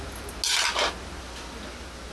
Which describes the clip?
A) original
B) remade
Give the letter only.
A